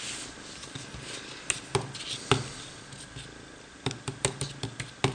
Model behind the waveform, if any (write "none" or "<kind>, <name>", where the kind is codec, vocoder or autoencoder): none